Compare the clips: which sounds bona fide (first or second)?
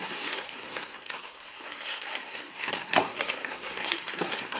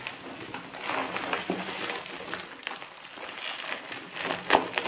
second